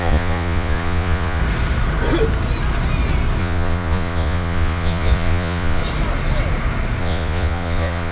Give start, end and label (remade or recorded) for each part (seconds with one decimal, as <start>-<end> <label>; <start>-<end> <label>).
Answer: 0.0-1.4 remade; 1.4-3.4 recorded; 3.4-5.8 remade; 5.8-7.0 recorded; 7.0-8.1 remade